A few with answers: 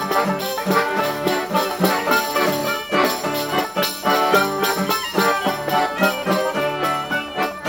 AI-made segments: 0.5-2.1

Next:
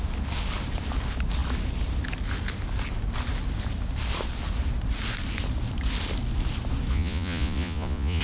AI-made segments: 6.9-8.2

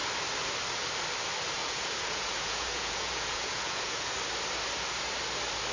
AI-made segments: 1.6-4.1

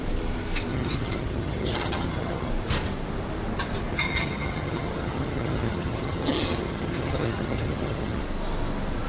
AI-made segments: 0.7-2.5; 3.9-8.2